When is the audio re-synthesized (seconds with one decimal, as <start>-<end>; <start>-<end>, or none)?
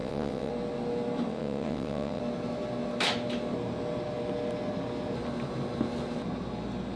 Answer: 0.0-0.5; 1.3-2.2